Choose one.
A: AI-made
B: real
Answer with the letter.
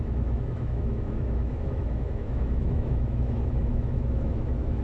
A